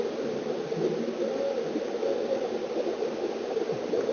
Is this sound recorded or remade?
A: recorded